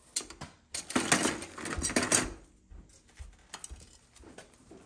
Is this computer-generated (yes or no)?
no